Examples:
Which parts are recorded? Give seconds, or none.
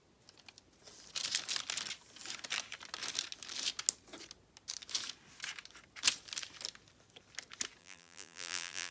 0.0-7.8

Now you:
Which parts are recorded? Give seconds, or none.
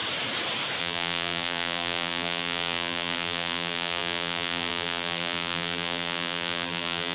0.0-0.8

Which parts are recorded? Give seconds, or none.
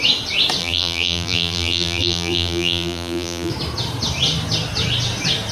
0.0-0.6; 3.5-5.5